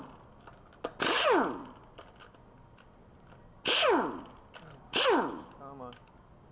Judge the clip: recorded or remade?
recorded